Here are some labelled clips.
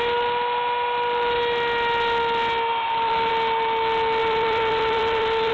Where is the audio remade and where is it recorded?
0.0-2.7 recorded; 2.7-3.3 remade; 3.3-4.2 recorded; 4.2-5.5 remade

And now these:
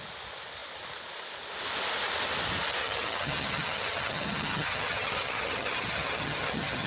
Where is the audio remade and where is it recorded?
0.0-2.8 recorded; 2.8-6.9 remade

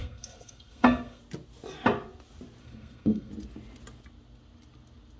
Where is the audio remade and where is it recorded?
0.0-1.2 remade; 1.2-2.6 recorded; 2.6-3.3 remade; 3.3-5.2 recorded

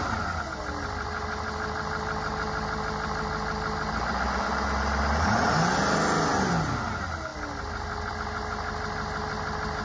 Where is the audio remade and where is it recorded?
0.0-9.8 recorded

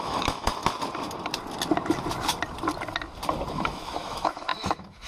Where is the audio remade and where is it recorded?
0.0-0.6 remade; 0.6-3.5 recorded; 3.5-5.1 remade

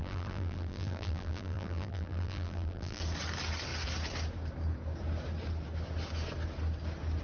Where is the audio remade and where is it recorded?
0.0-3.0 remade; 3.0-7.2 recorded